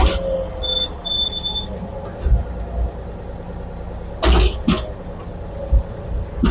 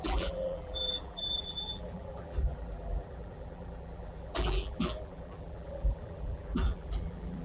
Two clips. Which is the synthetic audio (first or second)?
second